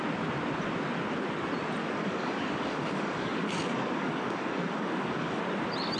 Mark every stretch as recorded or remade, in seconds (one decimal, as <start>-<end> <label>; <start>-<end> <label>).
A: 0.0-1.8 recorded; 1.8-5.4 remade; 5.4-6.0 recorded